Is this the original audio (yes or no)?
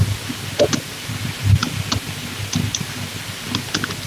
yes